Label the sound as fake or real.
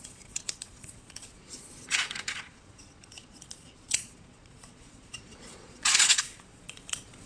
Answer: fake